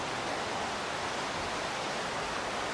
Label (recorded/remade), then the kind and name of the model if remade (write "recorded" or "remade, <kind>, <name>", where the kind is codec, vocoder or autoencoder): recorded